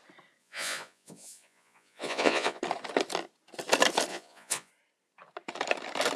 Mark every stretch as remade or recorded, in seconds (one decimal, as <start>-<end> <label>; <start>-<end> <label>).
0.0-0.4 recorded; 0.4-2.6 remade; 2.6-4.1 recorded; 4.1-4.7 remade; 4.7-6.2 recorded

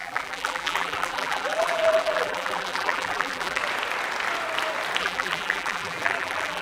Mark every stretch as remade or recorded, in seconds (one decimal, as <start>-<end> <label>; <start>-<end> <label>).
0.0-3.6 remade; 3.6-5.0 recorded; 5.0-6.6 remade

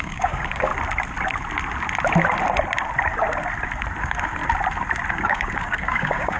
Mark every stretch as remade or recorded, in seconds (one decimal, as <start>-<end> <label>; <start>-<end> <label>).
0.0-0.7 remade; 0.7-4.0 recorded; 4.0-4.4 remade; 4.4-5.1 recorded; 5.1-6.4 remade

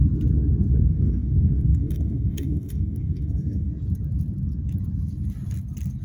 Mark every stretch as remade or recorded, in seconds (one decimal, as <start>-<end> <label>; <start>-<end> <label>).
0.0-0.7 recorded; 0.7-3.7 remade; 3.7-6.0 recorded

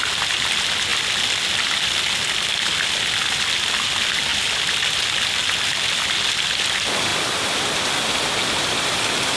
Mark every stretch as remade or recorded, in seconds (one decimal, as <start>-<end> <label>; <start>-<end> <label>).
0.0-9.4 recorded

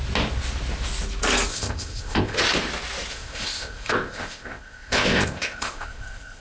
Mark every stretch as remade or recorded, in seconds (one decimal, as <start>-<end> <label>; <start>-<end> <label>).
0.0-1.5 recorded; 1.5-2.4 remade; 2.4-3.1 recorded; 3.1-6.4 remade